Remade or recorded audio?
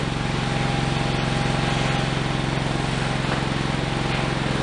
recorded